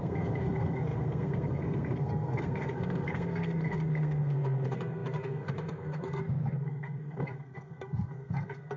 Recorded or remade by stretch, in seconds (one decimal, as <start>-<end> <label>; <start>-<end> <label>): 0.0-8.8 remade